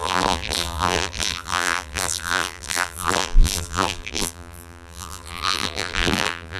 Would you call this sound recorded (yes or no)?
no